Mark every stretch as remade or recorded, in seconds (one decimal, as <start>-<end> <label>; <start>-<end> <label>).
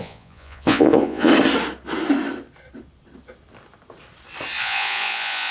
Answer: 0.0-1.3 remade; 1.3-4.6 recorded; 4.6-5.5 remade